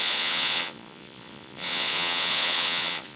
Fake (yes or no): yes